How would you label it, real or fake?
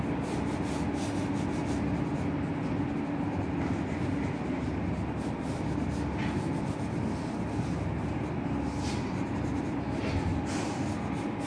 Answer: real